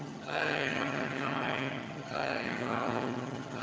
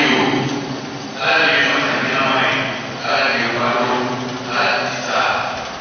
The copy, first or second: first